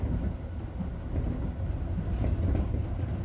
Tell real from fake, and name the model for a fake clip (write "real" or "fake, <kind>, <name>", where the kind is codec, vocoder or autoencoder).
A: real